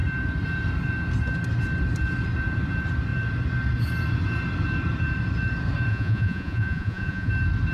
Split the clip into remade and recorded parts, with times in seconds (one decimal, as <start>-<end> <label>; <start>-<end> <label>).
0.0-5.9 recorded; 5.9-7.3 remade; 7.3-7.7 recorded